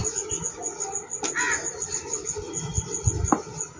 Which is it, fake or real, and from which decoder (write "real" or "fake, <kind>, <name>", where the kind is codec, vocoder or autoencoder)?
real